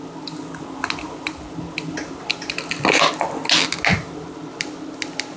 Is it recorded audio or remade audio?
recorded